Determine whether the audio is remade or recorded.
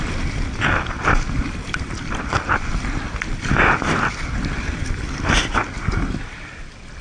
recorded